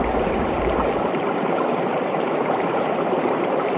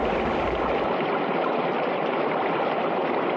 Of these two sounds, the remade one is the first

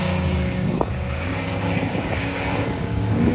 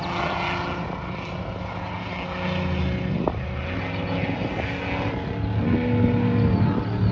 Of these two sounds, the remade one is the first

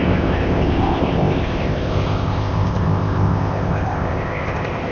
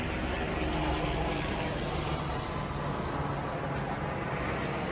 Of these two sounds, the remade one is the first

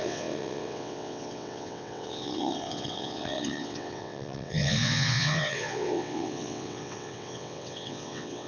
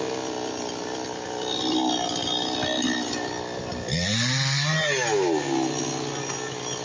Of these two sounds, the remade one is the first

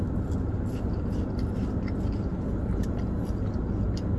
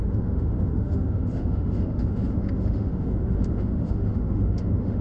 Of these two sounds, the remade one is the second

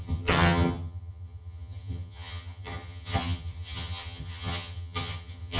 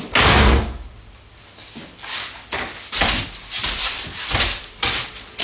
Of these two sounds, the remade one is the first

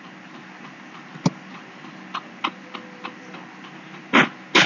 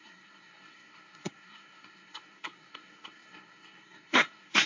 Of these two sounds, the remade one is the second